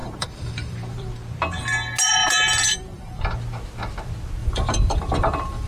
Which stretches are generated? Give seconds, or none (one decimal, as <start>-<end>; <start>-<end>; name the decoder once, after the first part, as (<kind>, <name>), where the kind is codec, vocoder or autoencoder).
0.0-1.1 (vocoder, BigVGAN v2); 2.2-3.2; 4.4-5.7